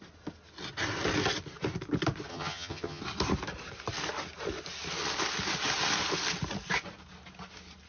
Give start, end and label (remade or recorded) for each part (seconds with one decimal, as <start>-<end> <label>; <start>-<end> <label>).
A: 0.0-2.3 recorded; 2.3-3.0 remade; 3.0-7.9 recorded